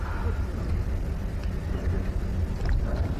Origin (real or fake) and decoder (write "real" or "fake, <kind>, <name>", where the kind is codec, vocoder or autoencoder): real